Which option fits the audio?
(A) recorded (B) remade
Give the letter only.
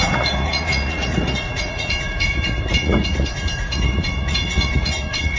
B